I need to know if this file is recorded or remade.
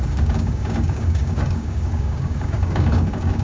remade